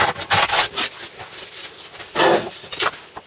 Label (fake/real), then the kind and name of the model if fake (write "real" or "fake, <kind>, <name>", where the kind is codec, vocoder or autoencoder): real